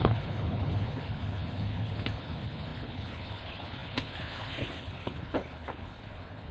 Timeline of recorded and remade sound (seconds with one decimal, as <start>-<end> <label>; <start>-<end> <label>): 0.0-6.5 remade